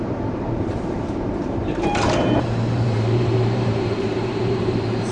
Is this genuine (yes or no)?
no